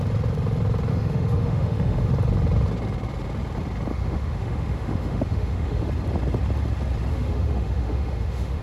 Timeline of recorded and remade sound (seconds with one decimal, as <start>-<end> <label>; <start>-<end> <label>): 0.0-0.9 recorded; 0.9-2.1 remade; 2.1-3.9 recorded; 3.9-5.9 remade; 5.9-7.1 recorded; 7.1-8.6 remade